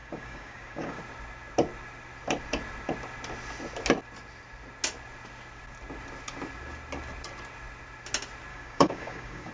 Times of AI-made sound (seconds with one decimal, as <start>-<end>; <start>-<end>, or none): 0.0-1.0; 8.5-9.5